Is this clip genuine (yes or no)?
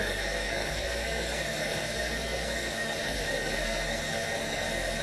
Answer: no